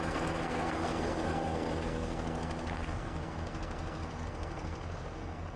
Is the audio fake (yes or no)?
yes